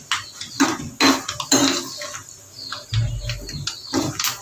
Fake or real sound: real